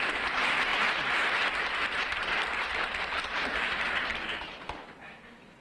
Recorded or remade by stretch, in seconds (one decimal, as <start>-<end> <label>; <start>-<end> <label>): 0.0-0.7 remade; 0.7-2.0 recorded; 2.0-4.1 remade; 4.1-5.6 recorded